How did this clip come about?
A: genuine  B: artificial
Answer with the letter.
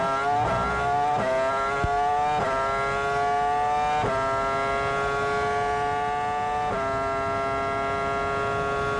A